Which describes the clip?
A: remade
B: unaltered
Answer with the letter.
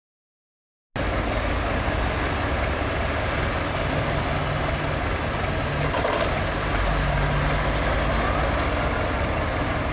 B